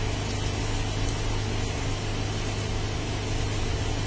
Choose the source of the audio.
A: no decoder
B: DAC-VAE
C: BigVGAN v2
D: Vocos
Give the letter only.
A